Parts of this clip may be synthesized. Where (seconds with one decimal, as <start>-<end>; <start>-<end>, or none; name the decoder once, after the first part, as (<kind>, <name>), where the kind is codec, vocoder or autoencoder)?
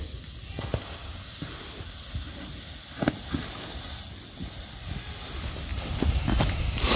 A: none